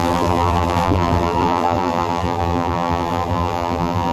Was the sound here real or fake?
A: fake